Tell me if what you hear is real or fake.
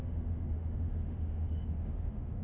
fake